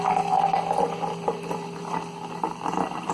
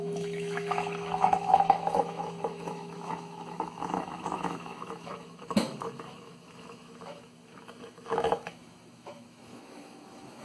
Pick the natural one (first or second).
first